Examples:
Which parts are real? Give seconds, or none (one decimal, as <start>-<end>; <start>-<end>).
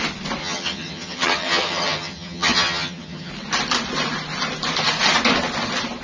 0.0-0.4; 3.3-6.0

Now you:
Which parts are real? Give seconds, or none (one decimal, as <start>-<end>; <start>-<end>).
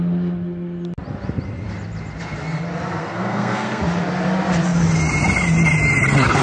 0.0-3.0; 3.8-6.4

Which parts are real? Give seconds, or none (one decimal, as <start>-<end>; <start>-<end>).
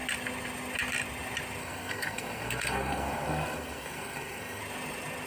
0.0-1.6; 4.6-5.3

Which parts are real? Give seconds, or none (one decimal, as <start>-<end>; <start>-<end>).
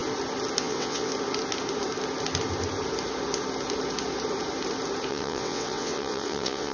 0.0-0.6; 1.1-5.1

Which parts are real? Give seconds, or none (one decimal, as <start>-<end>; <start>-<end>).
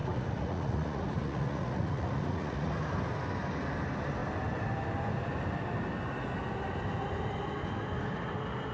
2.7-8.7